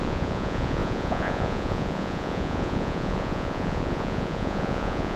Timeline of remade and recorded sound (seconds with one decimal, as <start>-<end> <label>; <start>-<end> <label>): 0.0-5.2 remade